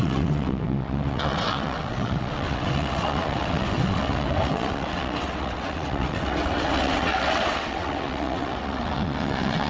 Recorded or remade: remade